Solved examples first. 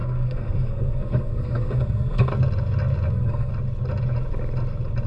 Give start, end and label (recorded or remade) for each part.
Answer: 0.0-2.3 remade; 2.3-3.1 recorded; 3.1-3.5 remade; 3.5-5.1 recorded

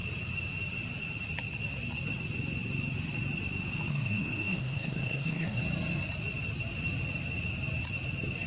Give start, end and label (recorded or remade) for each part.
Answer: 0.0-3.9 recorded; 3.9-5.6 remade; 5.6-8.5 recorded